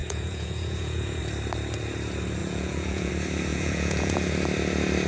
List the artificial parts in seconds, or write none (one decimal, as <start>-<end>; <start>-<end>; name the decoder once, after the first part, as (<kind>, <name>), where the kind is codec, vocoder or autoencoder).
0.0-1.2 (vocoder, Vocos); 2.4-3.1; 3.5-4.2